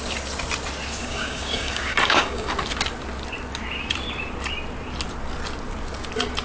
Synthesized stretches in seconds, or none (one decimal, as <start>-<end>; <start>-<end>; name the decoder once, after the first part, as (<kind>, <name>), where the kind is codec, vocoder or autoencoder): 1.0-2.5 (codec, DAC)